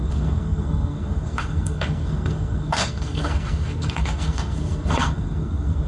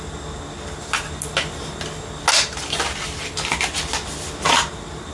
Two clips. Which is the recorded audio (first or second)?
second